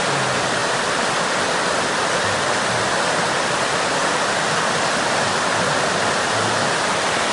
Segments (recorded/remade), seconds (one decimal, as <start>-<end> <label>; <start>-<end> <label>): 0.0-7.3 recorded